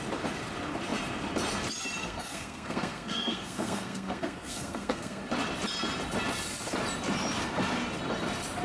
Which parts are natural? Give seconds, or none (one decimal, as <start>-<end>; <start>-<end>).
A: 0.0-2.0; 5.2-8.6